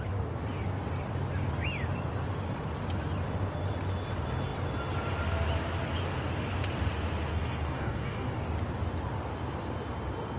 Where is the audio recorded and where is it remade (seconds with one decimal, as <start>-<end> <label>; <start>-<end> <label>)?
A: 0.0-7.3 recorded; 7.3-8.4 remade; 8.4-10.4 recorded